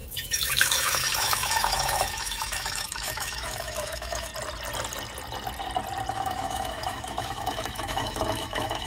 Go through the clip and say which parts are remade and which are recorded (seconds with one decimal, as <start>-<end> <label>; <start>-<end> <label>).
0.0-4.3 remade; 4.3-6.1 recorded; 6.1-8.9 remade